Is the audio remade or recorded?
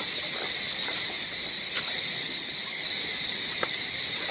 recorded